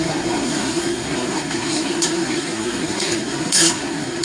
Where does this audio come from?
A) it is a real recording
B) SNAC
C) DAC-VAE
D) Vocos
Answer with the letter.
B